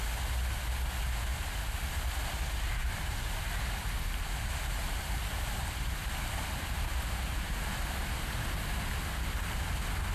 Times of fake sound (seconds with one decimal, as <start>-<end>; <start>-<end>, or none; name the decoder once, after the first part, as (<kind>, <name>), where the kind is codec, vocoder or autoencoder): 2.8-7.7 (vocoder, BigVGAN v2)